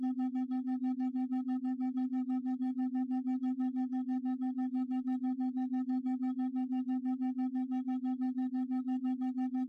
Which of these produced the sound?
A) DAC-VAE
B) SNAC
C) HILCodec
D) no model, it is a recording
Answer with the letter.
B